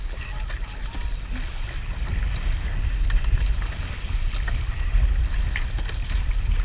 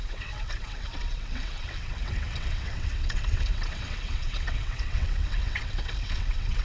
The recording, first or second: first